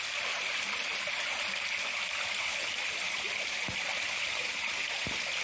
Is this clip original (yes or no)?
yes